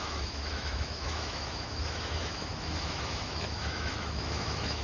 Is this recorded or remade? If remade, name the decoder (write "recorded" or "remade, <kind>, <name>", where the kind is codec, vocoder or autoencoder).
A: remade, autoencoder, DAC-VAE